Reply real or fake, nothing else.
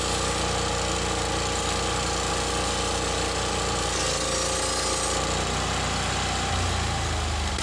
real